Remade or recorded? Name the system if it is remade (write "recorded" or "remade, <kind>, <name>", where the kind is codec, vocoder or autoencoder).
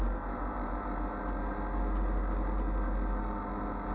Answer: recorded